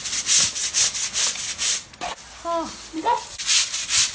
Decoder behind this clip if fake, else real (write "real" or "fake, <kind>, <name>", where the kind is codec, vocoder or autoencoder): real